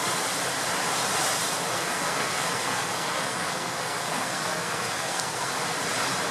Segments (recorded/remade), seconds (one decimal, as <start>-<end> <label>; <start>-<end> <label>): 0.0-1.7 recorded; 1.7-5.5 remade; 5.5-6.3 recorded